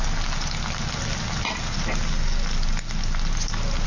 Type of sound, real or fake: real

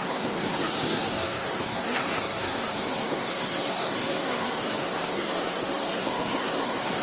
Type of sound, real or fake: fake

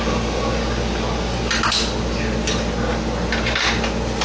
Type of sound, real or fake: real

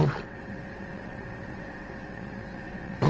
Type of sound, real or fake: fake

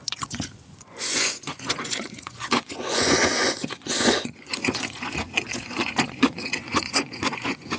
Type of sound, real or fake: fake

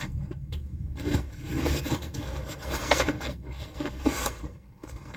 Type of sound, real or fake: fake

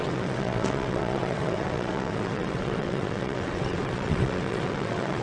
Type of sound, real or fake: fake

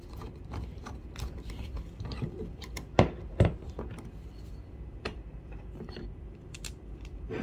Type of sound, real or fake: fake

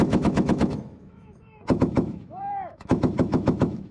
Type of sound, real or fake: fake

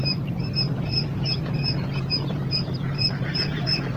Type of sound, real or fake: fake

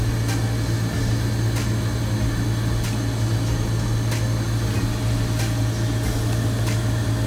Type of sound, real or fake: real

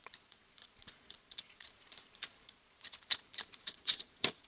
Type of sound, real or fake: fake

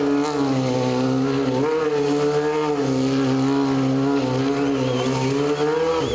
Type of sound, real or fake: real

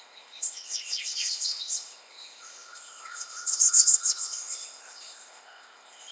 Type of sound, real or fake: fake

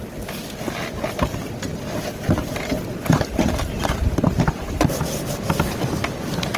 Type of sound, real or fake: real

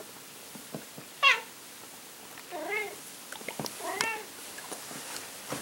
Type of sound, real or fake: real